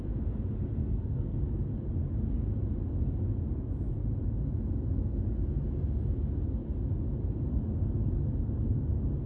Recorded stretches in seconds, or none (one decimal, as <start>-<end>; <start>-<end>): 0.0-0.8; 1.4-9.3